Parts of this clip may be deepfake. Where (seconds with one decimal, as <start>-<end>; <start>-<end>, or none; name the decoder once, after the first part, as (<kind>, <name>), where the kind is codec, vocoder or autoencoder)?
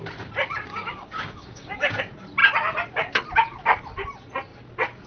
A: 0.7-2.0 (codec, DAC)